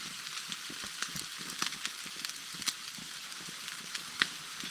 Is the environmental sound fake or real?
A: fake